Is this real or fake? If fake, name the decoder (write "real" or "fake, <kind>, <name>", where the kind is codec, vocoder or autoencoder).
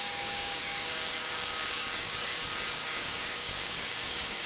fake, codec, DAC